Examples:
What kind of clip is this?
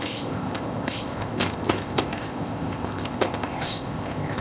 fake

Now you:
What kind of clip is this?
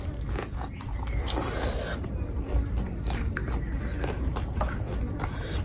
real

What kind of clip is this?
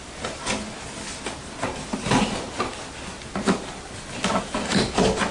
real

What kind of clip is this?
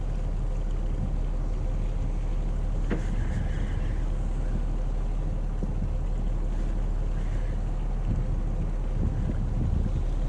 real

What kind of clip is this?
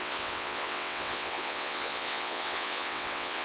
fake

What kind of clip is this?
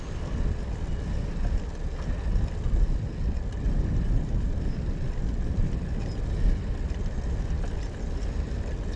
real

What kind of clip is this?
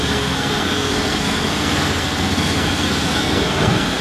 fake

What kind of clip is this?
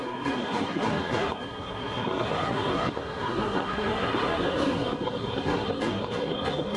fake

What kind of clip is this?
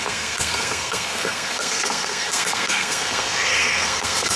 fake